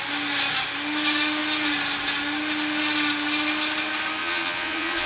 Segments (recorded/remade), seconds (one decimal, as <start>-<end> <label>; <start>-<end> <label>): 0.0-4.2 recorded; 4.2-5.1 remade